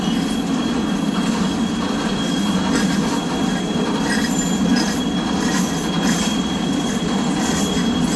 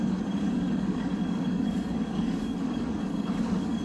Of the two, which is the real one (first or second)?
first